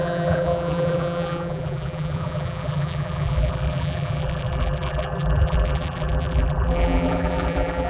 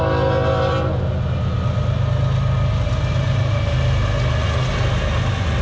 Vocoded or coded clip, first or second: first